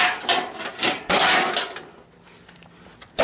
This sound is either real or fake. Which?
real